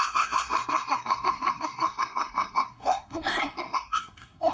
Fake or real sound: fake